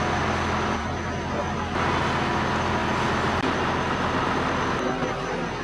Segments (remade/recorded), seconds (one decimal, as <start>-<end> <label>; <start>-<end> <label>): 0.0-5.6 recorded